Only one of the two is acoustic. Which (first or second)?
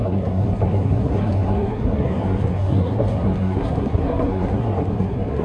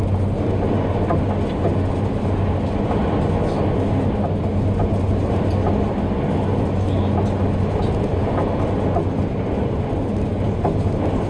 second